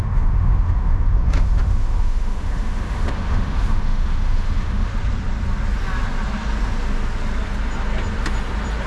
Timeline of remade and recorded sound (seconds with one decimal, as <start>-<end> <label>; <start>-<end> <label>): 0.0-4.9 remade; 4.9-8.9 recorded